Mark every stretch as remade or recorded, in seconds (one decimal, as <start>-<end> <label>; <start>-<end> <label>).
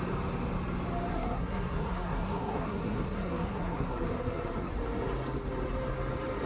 0.0-1.1 recorded; 1.1-4.7 remade; 4.7-6.5 recorded